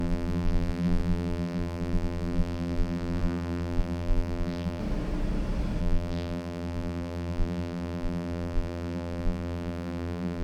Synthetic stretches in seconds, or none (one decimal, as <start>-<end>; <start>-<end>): 0.0-4.8; 5.8-10.4